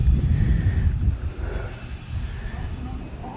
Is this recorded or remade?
recorded